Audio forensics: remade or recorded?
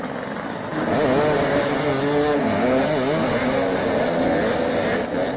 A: recorded